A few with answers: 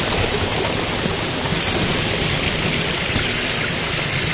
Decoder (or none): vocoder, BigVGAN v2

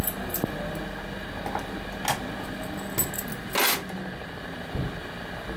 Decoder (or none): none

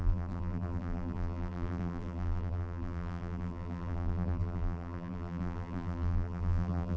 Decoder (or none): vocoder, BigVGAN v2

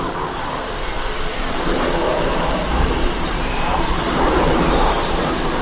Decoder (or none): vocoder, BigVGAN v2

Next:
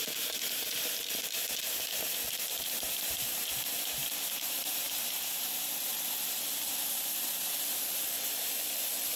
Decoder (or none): vocoder, BigVGAN v2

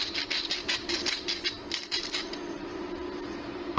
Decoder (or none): none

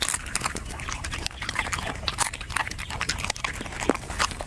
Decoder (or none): vocoder, BigVGAN v2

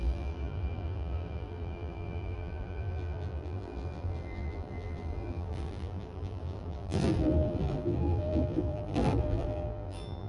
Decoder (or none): vocoder, BigVGAN v2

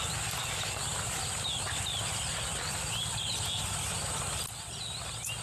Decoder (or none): none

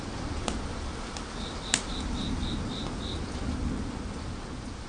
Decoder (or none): none